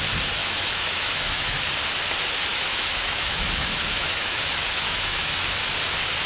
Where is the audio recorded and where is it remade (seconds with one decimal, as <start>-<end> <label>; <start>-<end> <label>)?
0.0-0.4 recorded; 0.4-1.6 remade; 1.6-2.5 recorded; 2.5-5.5 remade; 5.5-6.3 recorded